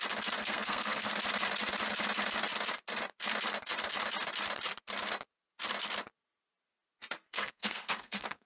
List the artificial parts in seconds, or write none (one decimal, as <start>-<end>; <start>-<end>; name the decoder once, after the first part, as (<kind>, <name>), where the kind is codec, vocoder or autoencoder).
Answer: 0.4-1.1 (codec, SNAC); 7.3-8.5